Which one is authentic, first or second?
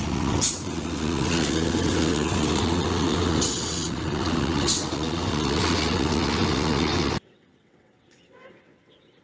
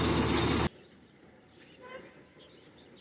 second